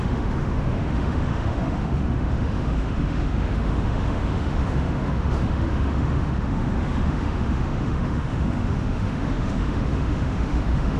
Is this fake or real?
fake